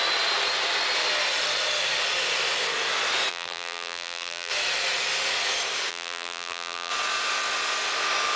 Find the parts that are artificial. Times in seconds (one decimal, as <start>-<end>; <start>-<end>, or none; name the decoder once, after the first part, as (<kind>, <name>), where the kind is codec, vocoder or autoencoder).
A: 3.3-4.5 (vocoder, BigVGAN v2); 5.9-6.9